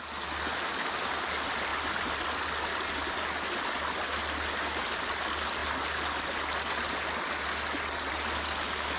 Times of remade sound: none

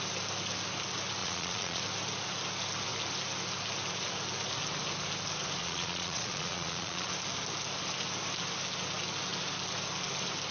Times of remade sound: 1.2-1.8 (vocoder, Vocos); 5.6-7.1

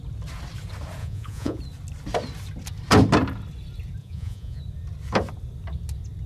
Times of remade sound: 1.0-1.6 (vocoder, Vocos); 4.0-4.6

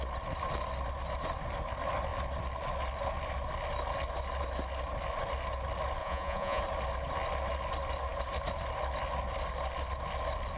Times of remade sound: 6.0-6.6 (vocoder, Vocos)

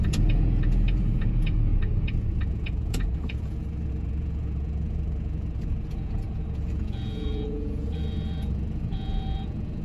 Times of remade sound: 0.0-9.8 (vocoder, Vocos)